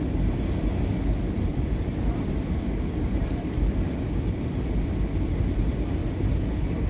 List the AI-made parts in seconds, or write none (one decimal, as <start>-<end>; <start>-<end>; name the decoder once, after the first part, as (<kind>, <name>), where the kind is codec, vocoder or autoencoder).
1.5-5.6 (vocoder, BigVGAN v2); 6.0-6.9